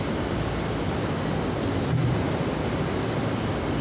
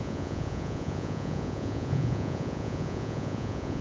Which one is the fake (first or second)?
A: second